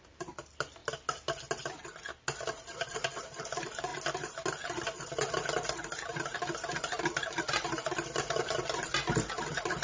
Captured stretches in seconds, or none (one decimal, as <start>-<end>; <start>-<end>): 0.8-2.4; 3.9-5.3